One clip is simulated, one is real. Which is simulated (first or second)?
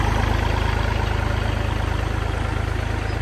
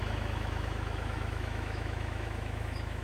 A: second